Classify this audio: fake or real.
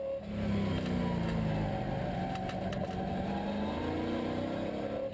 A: real